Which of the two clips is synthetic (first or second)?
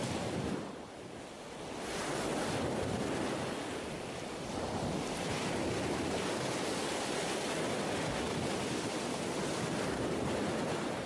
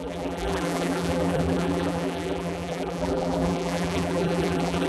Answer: second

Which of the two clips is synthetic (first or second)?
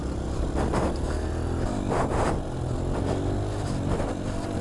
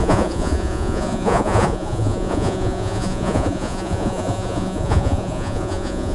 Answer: second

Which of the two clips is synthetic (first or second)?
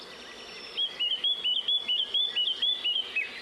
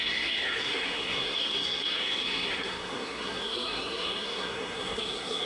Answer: second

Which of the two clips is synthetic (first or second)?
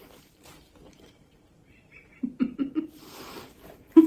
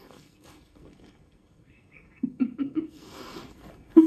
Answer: second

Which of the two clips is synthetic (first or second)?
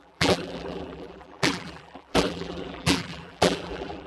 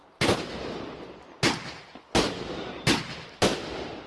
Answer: first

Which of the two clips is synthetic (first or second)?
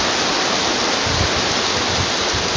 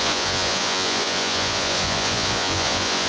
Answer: second